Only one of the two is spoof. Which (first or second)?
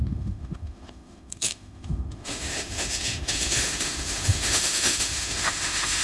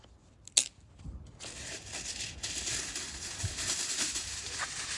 first